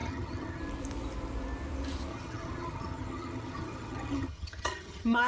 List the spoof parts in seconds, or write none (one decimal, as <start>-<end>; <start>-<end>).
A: 0.0-0.6; 2.1-5.3